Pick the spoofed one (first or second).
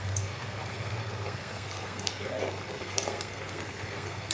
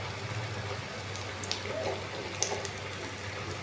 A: first